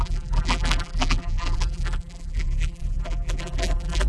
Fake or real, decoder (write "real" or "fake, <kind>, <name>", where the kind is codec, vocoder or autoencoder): fake, vocoder, BigVGAN v2